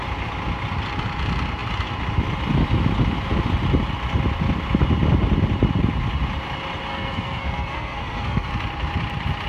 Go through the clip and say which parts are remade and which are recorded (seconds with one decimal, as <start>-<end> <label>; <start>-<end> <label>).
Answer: 0.0-6.9 recorded; 6.9-8.5 remade; 8.5-9.5 recorded